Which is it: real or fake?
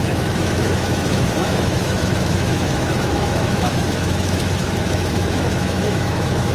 fake